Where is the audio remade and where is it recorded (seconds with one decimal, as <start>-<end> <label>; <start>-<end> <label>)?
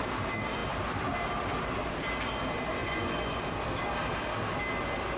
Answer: 0.0-2.8 recorded; 2.8-3.4 remade; 3.4-5.2 recorded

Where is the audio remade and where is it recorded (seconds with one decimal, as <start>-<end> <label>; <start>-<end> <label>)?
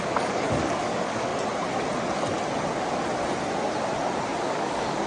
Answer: 0.0-1.3 remade; 1.3-4.4 recorded; 4.4-5.1 remade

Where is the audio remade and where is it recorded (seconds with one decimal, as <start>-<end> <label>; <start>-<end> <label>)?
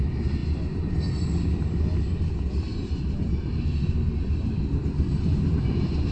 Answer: 0.0-6.1 recorded